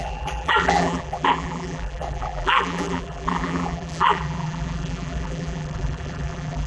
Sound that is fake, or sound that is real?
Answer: fake